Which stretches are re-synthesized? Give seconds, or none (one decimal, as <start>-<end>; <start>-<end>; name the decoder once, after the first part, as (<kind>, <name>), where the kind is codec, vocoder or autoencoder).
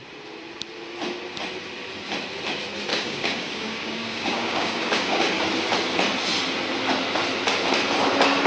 2.9-5.4 (codec, DAC)